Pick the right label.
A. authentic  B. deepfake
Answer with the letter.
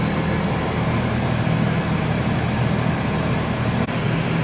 A